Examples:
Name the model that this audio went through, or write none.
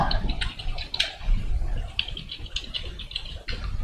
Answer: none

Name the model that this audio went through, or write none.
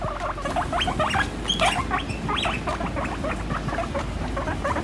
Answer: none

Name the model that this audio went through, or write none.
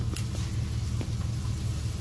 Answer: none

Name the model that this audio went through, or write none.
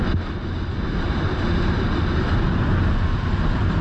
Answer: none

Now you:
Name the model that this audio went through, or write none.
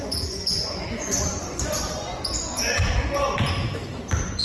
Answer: vocoder, Vocos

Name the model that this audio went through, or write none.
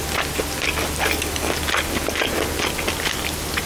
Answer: none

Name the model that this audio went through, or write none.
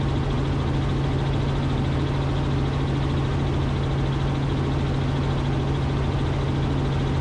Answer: none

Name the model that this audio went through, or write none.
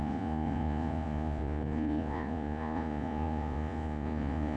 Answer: vocoder, Vocos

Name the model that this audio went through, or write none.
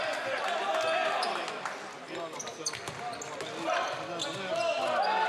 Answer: none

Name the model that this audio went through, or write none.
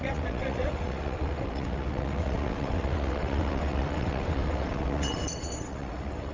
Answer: vocoder, WaveNeXt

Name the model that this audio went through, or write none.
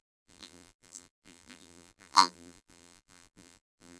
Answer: vocoder, BigVGAN v2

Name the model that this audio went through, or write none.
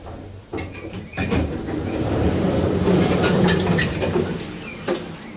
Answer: vocoder, BigVGAN v2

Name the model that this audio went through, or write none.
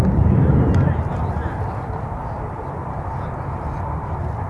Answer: none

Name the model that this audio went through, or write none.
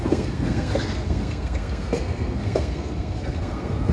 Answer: codec, SNAC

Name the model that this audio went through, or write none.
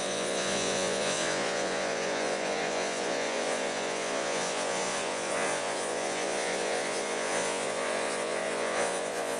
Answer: vocoder, Vocos